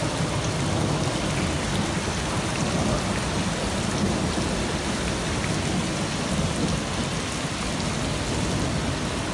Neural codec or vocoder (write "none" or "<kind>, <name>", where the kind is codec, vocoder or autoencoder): none